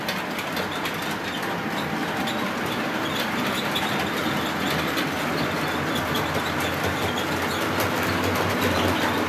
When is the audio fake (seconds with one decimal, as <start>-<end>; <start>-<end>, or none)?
none